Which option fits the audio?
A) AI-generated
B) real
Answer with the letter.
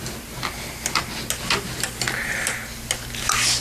B